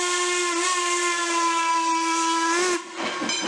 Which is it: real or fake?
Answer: real